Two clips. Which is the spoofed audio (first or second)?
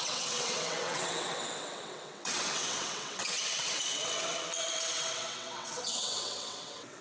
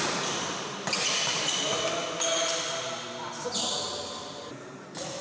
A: first